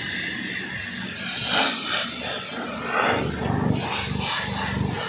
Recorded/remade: recorded